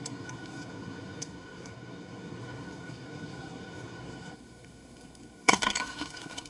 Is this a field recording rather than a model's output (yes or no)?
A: no